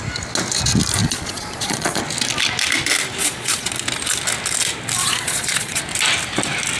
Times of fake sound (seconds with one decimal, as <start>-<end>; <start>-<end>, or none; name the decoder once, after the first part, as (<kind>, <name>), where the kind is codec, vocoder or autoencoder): 1.0-2.0 (vocoder, Vocos); 3.2-3.7; 5.0-5.8